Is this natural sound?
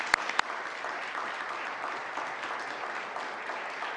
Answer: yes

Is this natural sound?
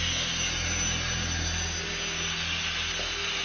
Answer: yes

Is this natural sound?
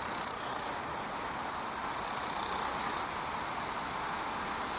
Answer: yes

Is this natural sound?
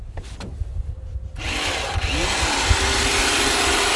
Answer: yes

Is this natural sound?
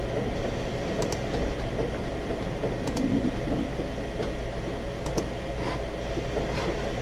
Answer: yes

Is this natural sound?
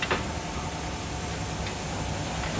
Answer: yes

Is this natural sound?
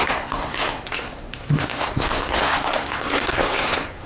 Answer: no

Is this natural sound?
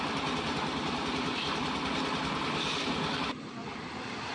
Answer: yes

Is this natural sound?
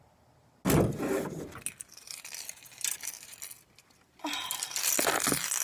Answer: yes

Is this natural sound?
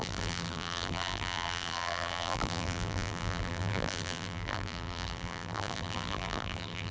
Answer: no